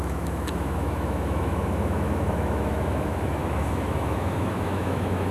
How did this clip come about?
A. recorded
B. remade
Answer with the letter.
B